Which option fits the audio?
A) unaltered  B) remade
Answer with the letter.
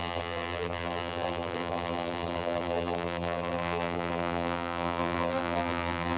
B